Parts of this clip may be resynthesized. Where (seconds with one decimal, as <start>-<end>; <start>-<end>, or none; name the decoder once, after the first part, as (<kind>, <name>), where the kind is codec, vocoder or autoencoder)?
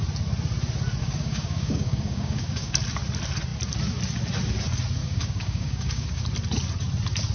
1.0-2.7 (codec, DAC); 5.0-6.2